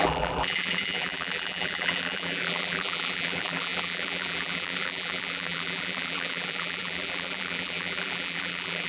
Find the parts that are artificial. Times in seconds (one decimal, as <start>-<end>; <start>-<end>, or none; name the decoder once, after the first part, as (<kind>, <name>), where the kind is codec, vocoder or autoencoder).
0.0-8.9 (vocoder, BigVGAN v2)